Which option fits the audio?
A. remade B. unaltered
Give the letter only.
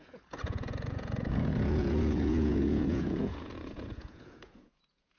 A